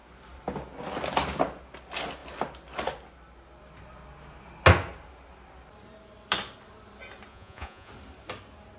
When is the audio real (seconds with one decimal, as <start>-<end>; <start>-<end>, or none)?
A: 0.0-7.3; 7.9-8.8